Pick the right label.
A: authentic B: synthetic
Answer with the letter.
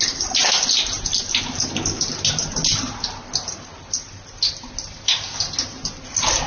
A